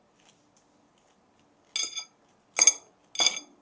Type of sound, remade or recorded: recorded